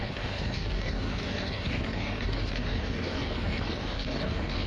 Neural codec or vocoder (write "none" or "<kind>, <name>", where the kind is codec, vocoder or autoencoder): codec, DAC